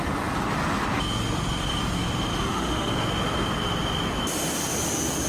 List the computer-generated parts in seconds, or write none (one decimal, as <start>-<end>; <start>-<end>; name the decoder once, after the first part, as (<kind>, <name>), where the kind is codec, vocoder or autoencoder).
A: 2.3-2.9 (autoencoder, DAC-VAE)